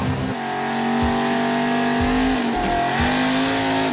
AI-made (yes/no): no